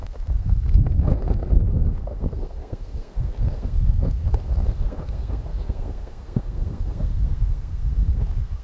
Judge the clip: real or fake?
fake